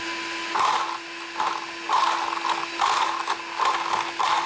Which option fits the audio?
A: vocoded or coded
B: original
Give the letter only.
B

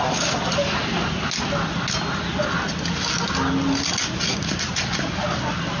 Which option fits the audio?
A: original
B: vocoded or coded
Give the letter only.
A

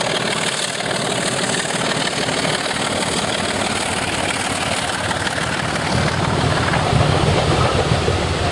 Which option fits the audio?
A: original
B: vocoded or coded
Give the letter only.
A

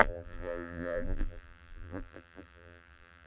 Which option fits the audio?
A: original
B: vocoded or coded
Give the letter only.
B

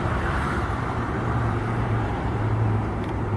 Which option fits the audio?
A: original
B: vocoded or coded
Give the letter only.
B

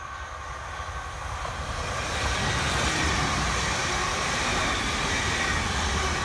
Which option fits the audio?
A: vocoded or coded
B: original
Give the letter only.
B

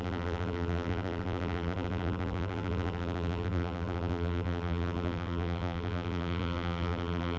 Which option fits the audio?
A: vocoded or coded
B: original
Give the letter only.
A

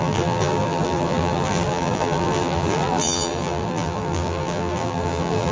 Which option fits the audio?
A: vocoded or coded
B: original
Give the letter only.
A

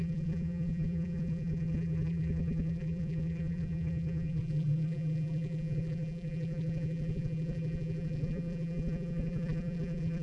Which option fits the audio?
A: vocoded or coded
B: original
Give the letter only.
A